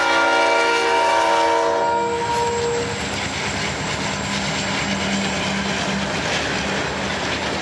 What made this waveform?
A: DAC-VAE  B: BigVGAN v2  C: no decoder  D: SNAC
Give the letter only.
C